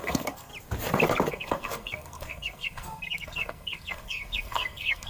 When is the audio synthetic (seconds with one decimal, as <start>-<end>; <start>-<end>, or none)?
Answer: 0.0-0.5; 1.3-5.1